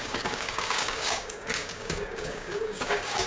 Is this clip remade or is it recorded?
remade